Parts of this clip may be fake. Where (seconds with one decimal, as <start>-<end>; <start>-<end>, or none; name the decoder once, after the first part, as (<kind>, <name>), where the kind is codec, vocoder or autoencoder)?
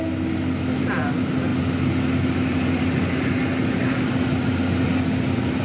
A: none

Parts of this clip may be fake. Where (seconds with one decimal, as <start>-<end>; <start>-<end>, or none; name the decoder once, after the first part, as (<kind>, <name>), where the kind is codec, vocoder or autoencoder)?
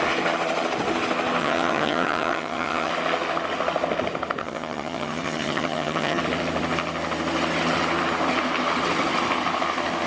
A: 1.4-2.9 (vocoder, HiFi-GAN); 4.4-6.2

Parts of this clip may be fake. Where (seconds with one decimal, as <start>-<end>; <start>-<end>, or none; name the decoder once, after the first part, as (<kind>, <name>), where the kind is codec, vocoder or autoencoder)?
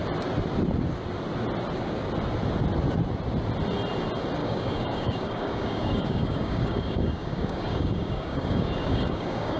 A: 4.4-9.6 (codec, DAC)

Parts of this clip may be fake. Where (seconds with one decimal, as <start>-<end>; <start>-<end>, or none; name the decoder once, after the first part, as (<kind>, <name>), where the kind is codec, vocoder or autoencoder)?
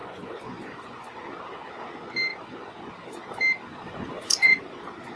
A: 0.0-1.1 (vocoder, Vocos); 2.3-2.9; 3.7-4.6